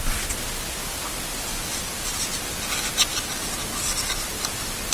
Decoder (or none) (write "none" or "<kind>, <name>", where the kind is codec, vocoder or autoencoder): none